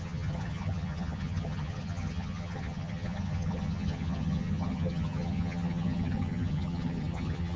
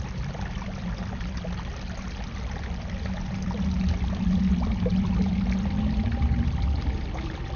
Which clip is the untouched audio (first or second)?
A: second